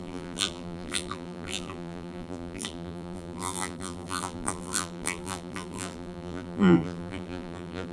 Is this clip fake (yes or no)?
yes